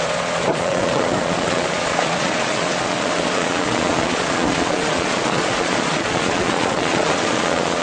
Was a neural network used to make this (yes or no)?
yes